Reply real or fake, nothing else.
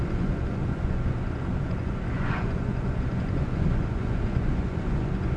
fake